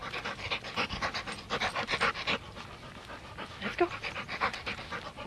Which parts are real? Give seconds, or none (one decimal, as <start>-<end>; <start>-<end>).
0.0-5.3